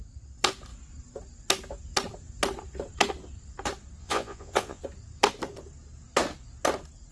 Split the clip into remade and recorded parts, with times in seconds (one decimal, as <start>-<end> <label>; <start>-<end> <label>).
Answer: 0.0-4.0 recorded; 4.0-4.8 remade; 4.8-7.1 recorded